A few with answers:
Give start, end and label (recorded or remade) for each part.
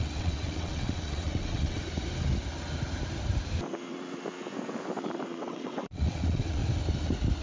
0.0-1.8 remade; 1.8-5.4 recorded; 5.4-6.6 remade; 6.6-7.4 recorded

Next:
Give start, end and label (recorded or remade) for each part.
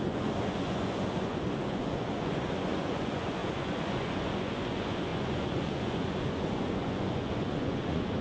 0.0-8.2 remade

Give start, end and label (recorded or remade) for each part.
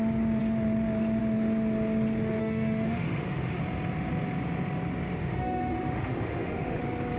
0.0-2.4 recorded; 2.4-3.6 remade; 3.6-5.2 recorded; 5.2-6.8 remade; 6.8-7.2 recorded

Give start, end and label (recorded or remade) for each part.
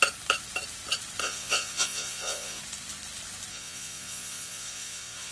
0.0-1.2 recorded; 1.2-2.6 remade; 2.6-3.5 recorded; 3.5-5.3 remade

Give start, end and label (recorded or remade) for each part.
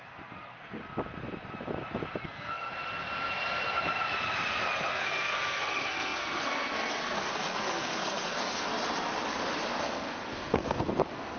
0.0-0.8 remade; 0.8-2.2 recorded; 2.2-2.7 remade; 2.7-4.9 recorded; 4.9-8.7 remade; 8.7-9.7 recorded; 9.7-11.4 remade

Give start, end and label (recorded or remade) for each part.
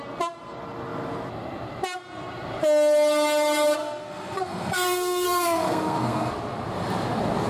0.0-3.8 recorded; 3.8-6.3 remade; 6.3-7.5 recorded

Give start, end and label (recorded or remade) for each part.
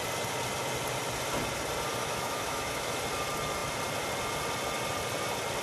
0.0-2.0 recorded; 2.0-3.0 remade; 3.0-5.6 recorded